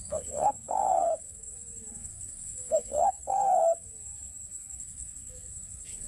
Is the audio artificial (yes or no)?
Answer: yes